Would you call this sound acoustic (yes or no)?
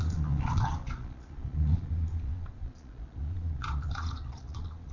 no